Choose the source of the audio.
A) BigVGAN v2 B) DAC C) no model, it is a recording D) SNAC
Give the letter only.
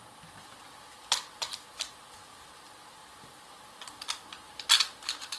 C